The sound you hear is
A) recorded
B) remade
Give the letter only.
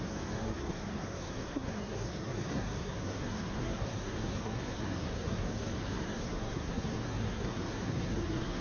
B